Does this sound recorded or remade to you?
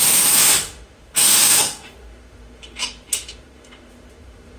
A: remade